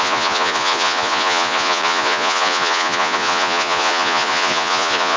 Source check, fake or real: fake